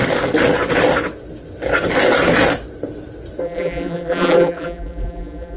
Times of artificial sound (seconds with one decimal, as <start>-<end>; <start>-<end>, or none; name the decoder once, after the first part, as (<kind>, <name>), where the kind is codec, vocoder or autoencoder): 3.4-5.6 (vocoder, BigVGAN v2)